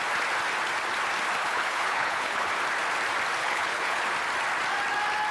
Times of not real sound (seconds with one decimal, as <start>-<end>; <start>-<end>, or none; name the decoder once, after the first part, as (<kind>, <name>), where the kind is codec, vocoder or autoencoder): 1.4-2.5 (codec, HILCodec); 3.4-4.0